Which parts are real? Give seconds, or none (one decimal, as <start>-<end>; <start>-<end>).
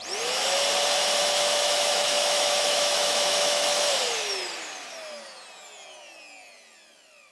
0.0-1.2; 3.9-7.3